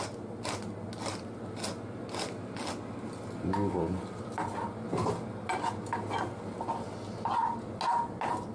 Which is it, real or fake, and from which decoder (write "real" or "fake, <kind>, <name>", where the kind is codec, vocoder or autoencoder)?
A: real